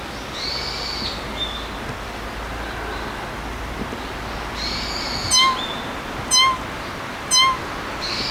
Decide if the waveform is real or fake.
real